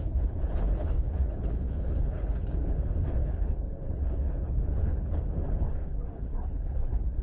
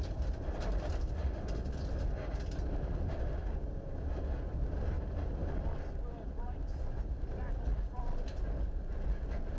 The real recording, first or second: second